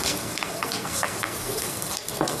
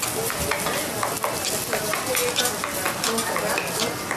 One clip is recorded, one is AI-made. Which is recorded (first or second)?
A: second